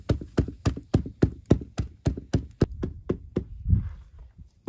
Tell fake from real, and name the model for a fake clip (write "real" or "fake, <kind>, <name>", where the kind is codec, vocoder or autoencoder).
real